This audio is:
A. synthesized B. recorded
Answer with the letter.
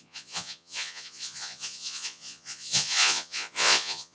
A